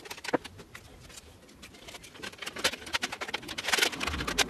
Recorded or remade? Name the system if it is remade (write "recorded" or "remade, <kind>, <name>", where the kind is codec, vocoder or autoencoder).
recorded